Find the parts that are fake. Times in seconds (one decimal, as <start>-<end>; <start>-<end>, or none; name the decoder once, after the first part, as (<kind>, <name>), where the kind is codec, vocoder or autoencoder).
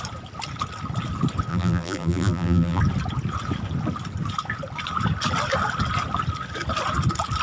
1.5-2.8 (vocoder, BigVGAN v2)